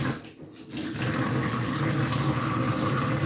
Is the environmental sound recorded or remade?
recorded